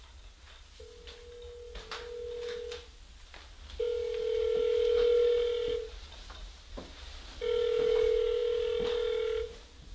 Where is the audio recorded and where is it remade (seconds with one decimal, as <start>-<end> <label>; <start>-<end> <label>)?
0.0-9.9 recorded